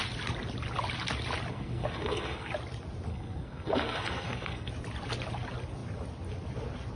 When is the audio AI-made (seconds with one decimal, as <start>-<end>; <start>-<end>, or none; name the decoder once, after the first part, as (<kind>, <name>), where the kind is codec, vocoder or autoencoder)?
1.5-2.5 (codec, SNAC); 3.1-4.7